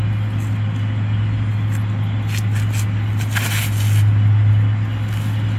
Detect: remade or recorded recorded